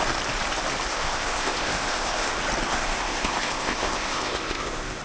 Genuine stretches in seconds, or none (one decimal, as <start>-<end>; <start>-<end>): 0.0-0.9; 2.3-2.7